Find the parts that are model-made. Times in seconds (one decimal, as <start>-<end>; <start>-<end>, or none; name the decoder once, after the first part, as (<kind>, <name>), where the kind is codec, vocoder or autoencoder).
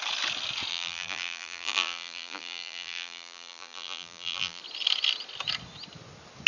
0.7-4.6 (vocoder, BigVGAN v2)